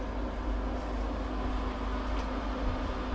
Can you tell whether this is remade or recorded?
recorded